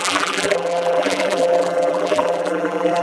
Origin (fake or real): fake